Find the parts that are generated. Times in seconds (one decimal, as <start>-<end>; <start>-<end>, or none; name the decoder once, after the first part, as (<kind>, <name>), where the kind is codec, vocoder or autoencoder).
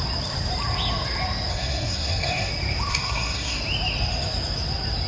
1.5-2.5 (codec, SNAC); 2.9-3.6